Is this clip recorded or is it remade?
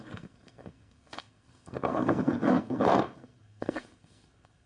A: remade